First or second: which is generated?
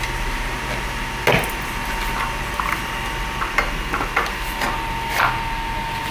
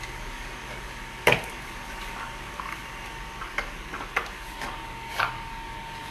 second